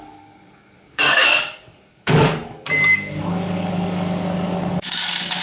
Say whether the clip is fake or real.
fake